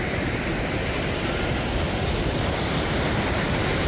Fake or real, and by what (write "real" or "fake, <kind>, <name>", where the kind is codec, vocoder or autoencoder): real